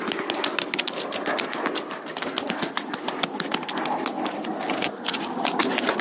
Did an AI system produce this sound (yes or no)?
no